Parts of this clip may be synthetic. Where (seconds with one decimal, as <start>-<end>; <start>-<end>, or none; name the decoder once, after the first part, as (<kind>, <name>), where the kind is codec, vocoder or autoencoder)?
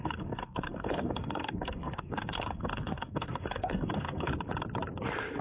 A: 0.0-4.3 (codec, SNAC)